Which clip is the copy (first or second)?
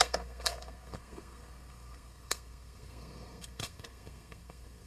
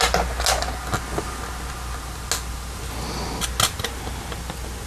first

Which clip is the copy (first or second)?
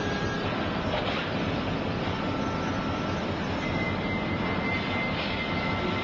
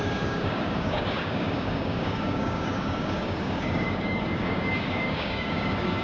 second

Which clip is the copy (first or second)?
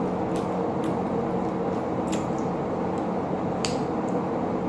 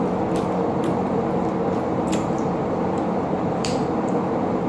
second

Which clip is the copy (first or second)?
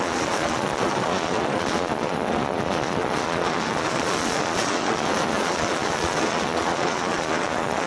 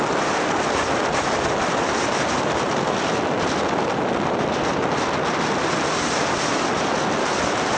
first